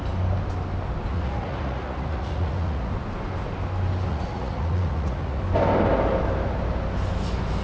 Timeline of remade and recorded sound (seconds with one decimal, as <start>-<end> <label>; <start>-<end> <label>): 0.0-1.1 recorded; 1.1-2.9 remade; 2.9-4.1 recorded; 4.1-5.4 remade; 5.4-7.6 recorded

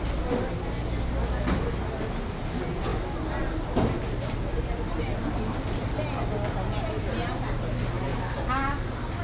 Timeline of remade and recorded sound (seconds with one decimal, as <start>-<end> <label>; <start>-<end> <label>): 0.0-9.2 recorded

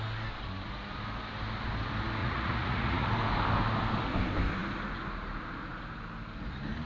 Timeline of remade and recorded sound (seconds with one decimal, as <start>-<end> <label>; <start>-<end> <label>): 0.0-2.2 recorded; 2.2-3.1 remade; 3.1-6.9 recorded